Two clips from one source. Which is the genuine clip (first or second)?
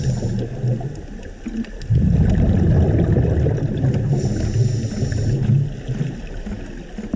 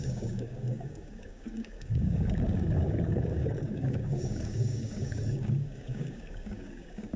first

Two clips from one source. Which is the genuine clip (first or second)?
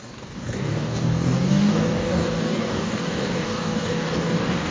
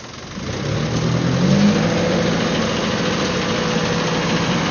second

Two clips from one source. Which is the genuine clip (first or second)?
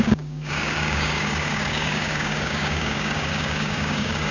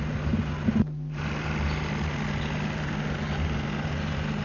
second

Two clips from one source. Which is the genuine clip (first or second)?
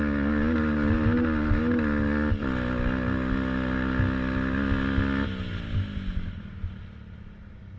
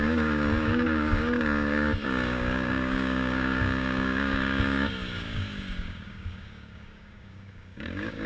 first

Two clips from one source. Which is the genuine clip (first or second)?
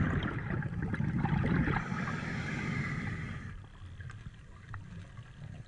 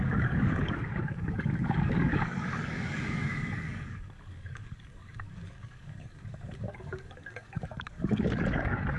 first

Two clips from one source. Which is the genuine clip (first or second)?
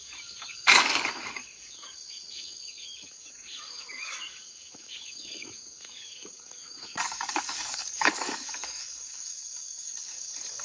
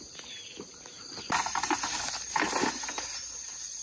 second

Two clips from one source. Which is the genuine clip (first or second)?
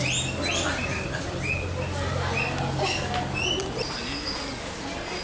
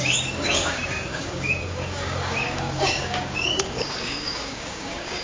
first